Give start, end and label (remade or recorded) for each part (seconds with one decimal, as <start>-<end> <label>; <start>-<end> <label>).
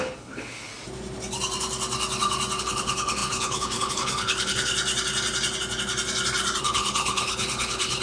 0.0-0.7 remade; 0.7-2.6 recorded; 2.6-4.7 remade; 4.7-6.6 recorded; 6.6-8.0 remade